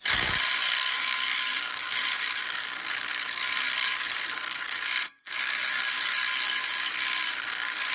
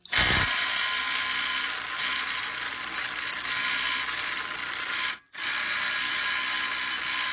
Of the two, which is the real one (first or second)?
second